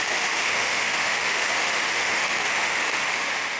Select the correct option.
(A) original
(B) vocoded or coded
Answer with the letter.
B